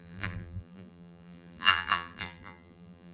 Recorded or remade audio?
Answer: remade